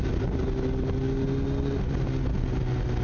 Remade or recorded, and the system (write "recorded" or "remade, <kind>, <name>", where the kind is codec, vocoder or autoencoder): recorded